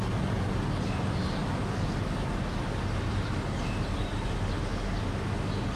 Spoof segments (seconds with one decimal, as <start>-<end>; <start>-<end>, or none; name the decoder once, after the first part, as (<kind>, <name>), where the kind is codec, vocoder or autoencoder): none